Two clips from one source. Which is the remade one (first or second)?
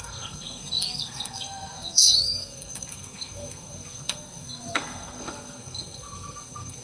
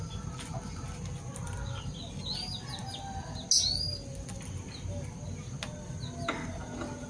first